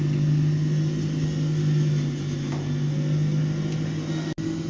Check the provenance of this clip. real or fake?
real